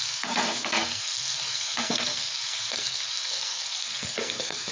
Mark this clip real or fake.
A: fake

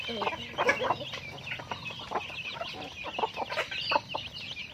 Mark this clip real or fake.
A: real